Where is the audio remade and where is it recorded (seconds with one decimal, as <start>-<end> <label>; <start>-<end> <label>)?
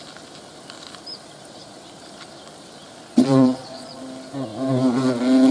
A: 0.0-3.1 recorded; 3.1-4.0 remade; 4.0-5.5 recorded